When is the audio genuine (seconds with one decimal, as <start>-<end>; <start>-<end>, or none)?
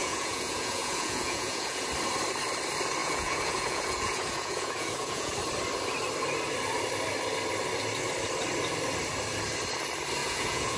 1.9-3.0; 5.3-10.2